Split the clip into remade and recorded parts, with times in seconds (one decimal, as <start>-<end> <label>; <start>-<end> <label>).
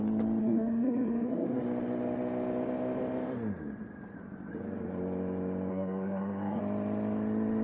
0.0-0.4 recorded; 0.4-1.6 remade; 1.6-5.7 recorded; 5.7-6.6 remade; 6.6-7.6 recorded